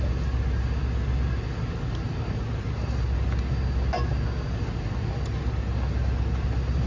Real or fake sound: real